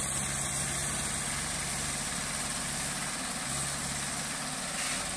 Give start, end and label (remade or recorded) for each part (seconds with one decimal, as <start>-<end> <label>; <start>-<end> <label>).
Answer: 0.0-5.2 recorded